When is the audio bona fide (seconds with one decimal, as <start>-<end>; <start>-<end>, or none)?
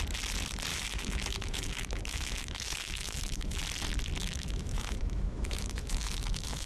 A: 0.0-0.7; 3.6-4.2